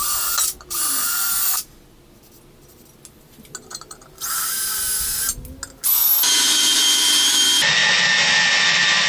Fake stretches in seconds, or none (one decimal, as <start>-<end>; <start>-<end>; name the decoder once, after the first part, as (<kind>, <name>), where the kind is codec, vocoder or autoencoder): none